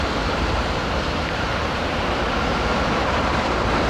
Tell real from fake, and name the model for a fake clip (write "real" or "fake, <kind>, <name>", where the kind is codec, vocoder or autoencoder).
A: fake, vocoder, BigVGAN v2